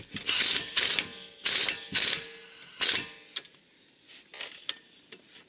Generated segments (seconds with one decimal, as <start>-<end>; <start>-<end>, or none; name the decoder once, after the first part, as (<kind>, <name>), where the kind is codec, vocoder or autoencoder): none